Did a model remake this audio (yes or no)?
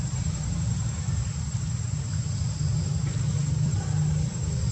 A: yes